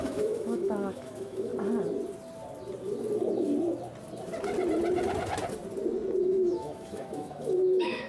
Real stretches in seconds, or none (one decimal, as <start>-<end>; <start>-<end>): 1.5-6.2